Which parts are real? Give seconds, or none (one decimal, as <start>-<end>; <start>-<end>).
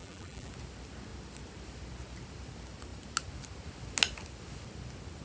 0.5-5.2